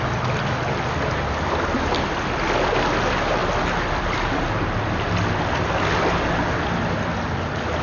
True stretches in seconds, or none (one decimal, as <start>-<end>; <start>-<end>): 0.0-7.8

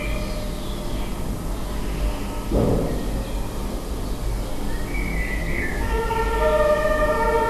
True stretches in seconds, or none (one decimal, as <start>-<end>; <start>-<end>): 0.0-5.4; 6.1-7.5

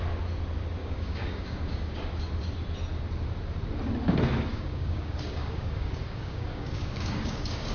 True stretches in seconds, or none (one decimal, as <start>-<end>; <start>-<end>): 0.0-0.8; 2.2-4.5

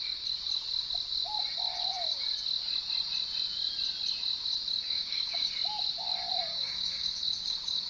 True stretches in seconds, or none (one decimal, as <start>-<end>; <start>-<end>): 0.0-4.7; 5.5-6.5

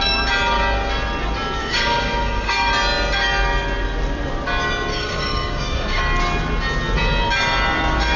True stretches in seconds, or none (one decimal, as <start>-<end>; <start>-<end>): 0.0-1.6; 2.7-4.9; 6.0-8.2

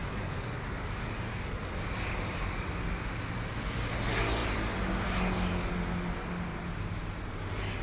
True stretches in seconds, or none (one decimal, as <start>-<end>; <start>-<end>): 1.6-7.8

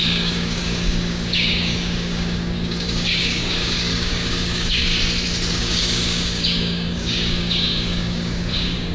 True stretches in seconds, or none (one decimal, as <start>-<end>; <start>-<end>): 4.9-5.5